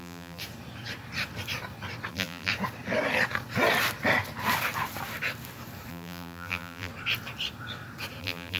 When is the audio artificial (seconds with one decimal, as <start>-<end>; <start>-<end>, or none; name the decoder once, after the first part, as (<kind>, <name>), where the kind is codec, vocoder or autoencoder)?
0.0-0.4 (vocoder, BigVGAN v2); 2.1-2.5; 5.9-6.9; 8.2-8.6